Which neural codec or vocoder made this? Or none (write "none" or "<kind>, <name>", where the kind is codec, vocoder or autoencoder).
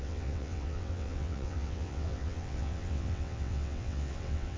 vocoder, WaveNeXt